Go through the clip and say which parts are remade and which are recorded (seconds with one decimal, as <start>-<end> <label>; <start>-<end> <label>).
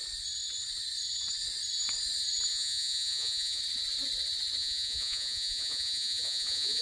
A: 0.0-2.5 recorded; 2.5-3.6 remade; 3.6-4.6 recorded; 4.6-6.8 remade